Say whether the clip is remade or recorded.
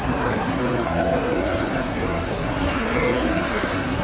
remade